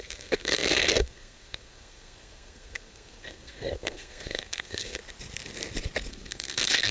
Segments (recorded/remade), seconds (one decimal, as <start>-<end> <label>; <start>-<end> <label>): 0.0-5.0 remade; 5.0-6.1 recorded; 6.1-6.9 remade

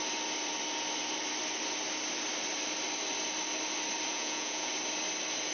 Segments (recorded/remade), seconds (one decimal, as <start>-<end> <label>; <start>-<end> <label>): 0.0-4.1 recorded; 4.1-4.7 remade; 4.7-5.5 recorded